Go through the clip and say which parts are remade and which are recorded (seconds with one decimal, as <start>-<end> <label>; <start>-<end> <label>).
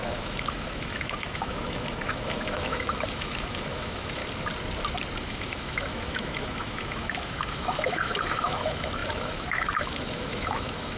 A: 0.0-4.2 remade; 4.2-5.2 recorded; 5.2-11.0 remade